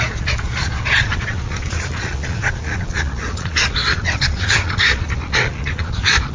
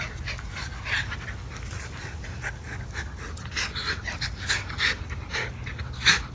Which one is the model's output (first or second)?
first